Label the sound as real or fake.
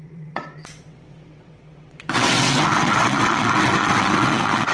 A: fake